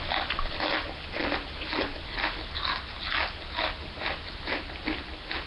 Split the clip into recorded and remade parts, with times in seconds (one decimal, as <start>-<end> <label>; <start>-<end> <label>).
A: 0.0-5.5 recorded